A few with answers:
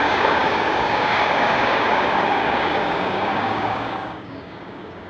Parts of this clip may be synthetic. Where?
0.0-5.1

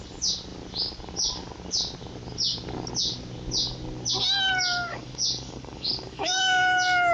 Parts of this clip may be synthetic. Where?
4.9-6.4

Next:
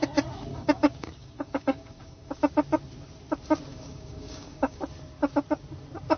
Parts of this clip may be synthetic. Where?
0.5-2.3; 3.7-4.8